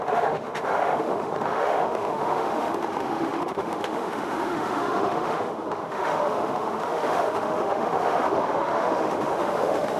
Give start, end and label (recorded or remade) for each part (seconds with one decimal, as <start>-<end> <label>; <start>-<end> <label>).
0.0-10.0 remade